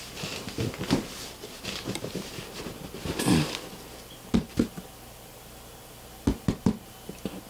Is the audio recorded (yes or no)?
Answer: no